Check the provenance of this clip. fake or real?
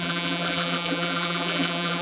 fake